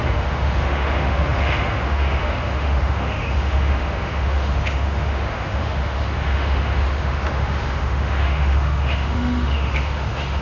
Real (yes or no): no